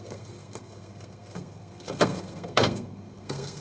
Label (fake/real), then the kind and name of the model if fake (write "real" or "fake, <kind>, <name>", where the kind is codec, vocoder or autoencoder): fake, codec, SNAC